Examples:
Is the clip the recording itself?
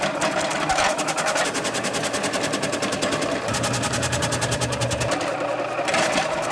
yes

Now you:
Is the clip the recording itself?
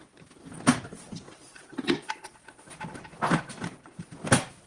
yes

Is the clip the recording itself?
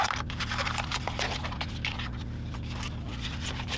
no